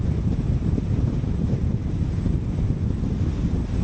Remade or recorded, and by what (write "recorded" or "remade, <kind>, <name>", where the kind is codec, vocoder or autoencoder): recorded